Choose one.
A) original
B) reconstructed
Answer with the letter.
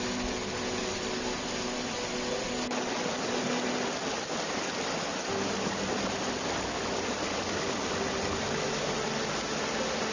A